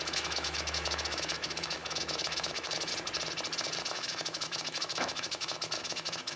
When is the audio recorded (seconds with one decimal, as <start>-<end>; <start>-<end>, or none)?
2.9-3.9